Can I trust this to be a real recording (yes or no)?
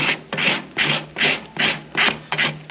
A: yes